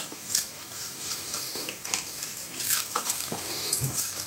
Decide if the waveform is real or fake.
fake